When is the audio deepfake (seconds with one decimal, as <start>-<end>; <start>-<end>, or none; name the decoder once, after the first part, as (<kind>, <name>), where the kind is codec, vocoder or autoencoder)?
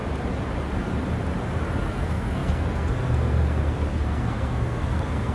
1.9-5.3 (codec, SNAC)